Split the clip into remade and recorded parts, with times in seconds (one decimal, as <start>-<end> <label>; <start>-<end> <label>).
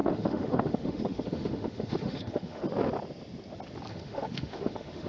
0.0-2.6 remade; 2.6-3.9 recorded; 3.9-5.1 remade